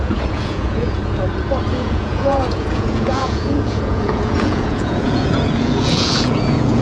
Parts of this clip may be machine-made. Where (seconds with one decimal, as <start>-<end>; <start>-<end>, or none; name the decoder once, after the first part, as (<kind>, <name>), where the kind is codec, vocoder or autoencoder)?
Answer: 0.0-1.0 (vocoder, Vocos); 1.7-6.8